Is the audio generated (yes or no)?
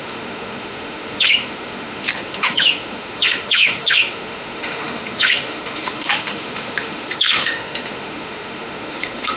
yes